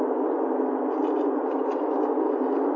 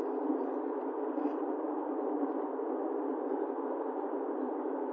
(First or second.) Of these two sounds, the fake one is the second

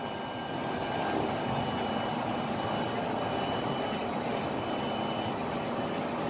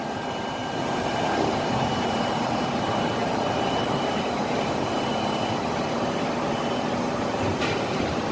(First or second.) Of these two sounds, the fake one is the second